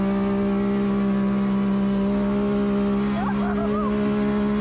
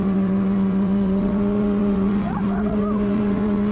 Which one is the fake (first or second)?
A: second